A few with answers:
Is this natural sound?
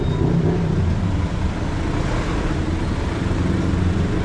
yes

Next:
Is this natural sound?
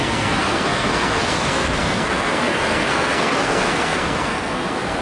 no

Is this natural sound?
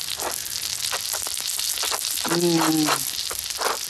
yes